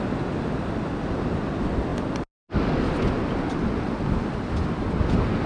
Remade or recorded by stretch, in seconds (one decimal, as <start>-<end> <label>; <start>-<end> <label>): 0.0-5.5 recorded